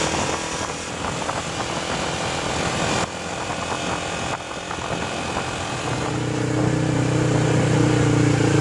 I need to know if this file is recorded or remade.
recorded